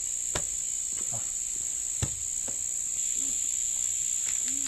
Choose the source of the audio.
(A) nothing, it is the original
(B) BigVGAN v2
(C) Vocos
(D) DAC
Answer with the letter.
A